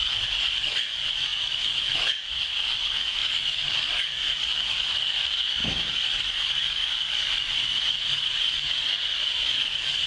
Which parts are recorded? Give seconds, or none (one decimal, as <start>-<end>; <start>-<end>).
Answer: none